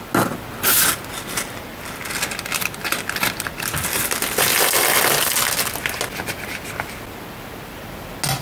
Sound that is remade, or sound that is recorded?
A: recorded